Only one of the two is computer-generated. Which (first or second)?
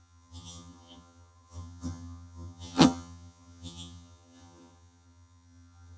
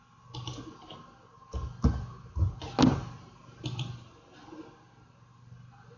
first